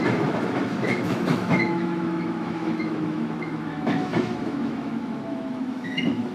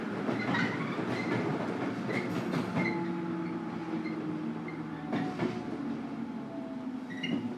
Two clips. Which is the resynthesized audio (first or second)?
first